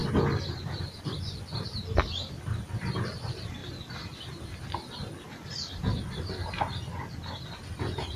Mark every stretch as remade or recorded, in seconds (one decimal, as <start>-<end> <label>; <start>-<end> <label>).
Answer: 0.0-8.2 recorded